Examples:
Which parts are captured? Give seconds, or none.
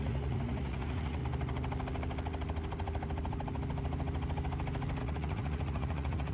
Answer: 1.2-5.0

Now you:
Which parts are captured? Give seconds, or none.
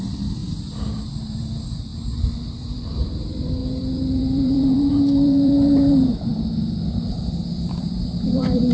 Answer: 0.4-0.9; 1.9-2.5; 6.3-7.8